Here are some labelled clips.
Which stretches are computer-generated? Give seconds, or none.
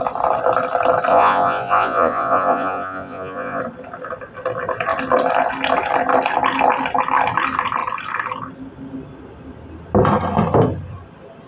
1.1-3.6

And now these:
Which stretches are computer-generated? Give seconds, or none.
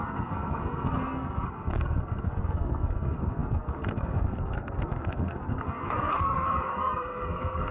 0.0-7.7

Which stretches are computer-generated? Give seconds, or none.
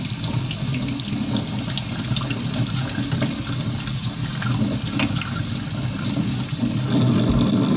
none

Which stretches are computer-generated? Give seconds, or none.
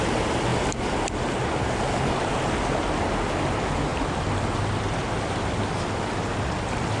0.5-2.3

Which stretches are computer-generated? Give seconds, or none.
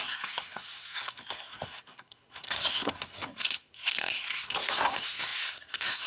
0.0-6.1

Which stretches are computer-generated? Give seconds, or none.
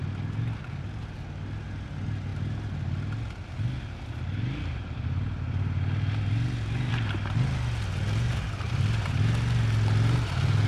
none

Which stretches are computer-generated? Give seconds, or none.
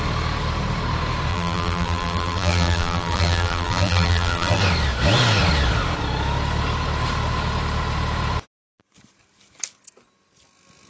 1.3-4.6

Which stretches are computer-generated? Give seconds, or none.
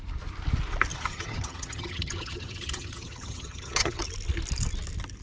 0.9-4.0